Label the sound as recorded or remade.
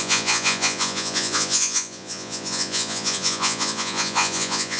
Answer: remade